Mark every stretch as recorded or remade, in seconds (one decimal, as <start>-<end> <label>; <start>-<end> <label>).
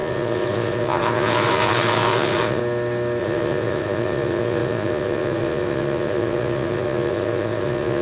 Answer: 0.0-2.6 remade; 2.6-3.2 recorded; 3.2-8.0 remade